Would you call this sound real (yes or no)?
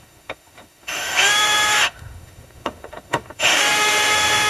no